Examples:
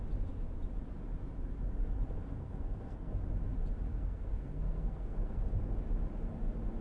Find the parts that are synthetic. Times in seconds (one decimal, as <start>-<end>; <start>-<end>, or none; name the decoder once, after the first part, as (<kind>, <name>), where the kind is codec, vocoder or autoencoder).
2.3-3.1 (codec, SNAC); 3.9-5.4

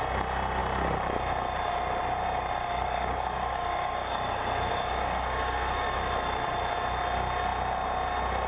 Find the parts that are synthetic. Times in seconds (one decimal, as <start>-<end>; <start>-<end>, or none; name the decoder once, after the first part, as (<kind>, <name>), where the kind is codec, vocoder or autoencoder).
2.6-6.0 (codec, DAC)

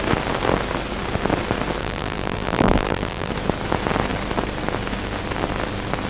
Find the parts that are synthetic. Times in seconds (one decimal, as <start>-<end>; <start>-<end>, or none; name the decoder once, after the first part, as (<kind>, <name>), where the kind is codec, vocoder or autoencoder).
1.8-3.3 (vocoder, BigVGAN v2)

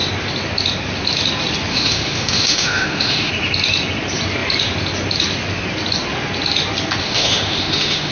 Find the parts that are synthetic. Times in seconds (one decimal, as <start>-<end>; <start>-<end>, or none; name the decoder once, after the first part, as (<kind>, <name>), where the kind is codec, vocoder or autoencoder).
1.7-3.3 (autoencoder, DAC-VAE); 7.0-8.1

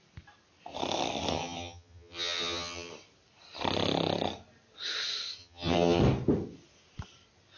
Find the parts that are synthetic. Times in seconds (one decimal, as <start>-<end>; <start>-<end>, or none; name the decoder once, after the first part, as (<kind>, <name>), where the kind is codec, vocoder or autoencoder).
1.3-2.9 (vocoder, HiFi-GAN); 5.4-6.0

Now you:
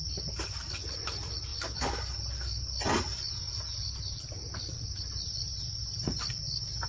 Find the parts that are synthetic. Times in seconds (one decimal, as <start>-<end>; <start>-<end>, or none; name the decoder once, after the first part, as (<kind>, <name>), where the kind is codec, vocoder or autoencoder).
none